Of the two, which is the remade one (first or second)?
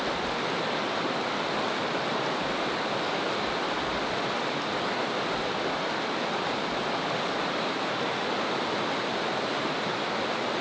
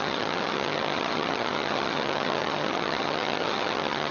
second